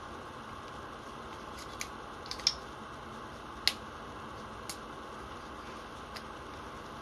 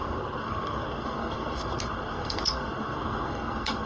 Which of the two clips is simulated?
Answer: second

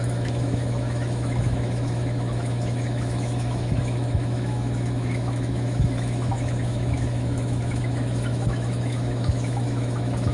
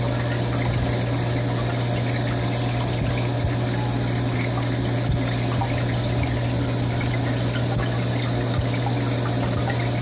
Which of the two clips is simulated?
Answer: first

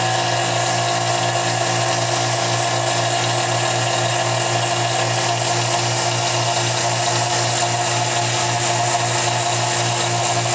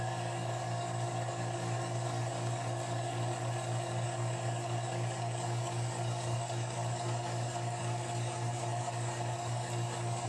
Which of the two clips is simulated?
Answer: second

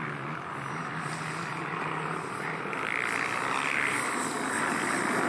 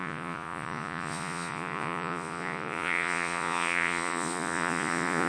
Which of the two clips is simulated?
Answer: second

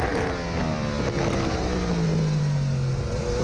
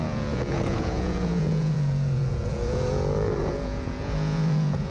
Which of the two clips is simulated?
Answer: second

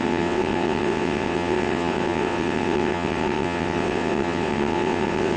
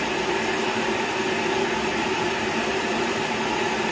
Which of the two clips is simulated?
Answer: first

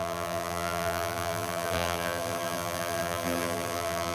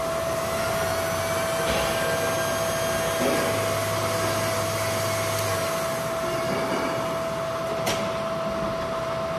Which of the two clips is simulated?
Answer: first